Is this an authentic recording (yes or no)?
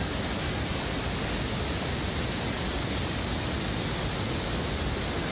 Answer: yes